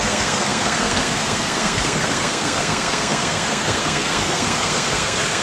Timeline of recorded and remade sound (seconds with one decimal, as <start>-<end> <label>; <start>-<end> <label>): 0.0-5.4 remade